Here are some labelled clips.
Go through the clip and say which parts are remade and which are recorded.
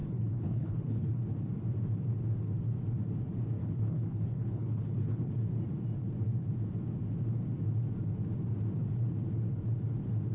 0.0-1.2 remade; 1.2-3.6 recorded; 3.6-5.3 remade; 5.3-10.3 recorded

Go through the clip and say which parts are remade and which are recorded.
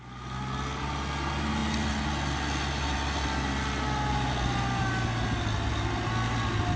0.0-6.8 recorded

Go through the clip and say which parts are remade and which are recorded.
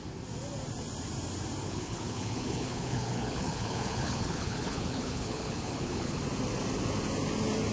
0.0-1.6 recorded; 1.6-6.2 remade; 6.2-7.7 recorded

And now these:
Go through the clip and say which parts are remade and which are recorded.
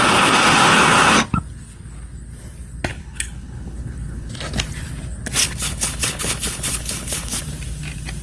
0.0-2.9 recorded; 2.9-4.3 remade; 4.3-5.4 recorded; 5.4-7.4 remade; 7.4-8.2 recorded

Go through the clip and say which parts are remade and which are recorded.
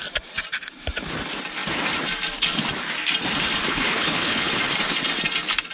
0.0-3.7 recorded; 3.7-4.5 remade; 4.5-5.7 recorded